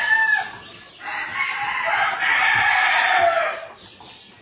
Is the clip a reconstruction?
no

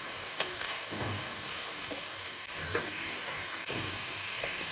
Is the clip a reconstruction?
yes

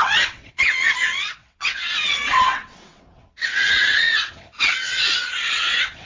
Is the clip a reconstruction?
yes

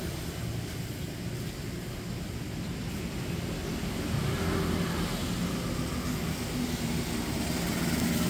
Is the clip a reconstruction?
no